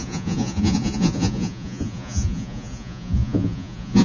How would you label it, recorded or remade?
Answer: remade